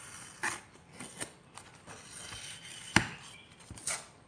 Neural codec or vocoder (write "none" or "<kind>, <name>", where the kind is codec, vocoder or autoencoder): none